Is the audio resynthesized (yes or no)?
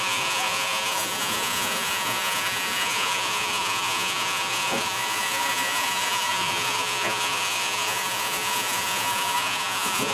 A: yes